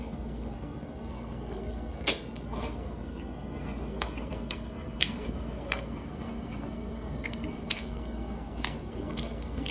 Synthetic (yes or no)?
yes